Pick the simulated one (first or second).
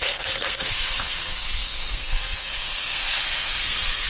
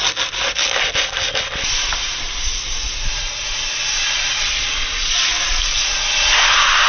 first